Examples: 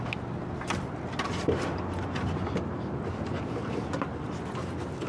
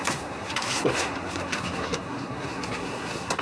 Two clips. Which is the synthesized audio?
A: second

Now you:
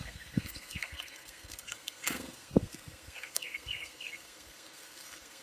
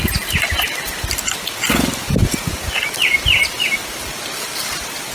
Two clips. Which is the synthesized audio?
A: first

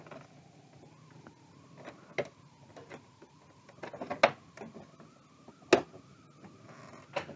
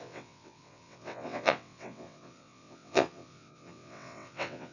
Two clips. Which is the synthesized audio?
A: second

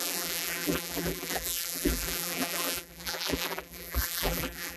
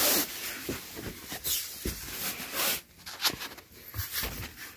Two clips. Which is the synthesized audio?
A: first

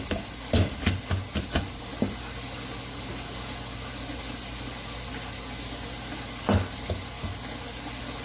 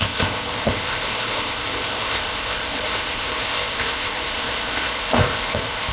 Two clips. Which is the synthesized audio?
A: second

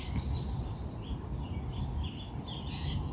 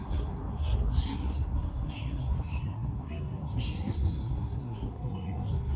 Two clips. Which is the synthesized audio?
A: second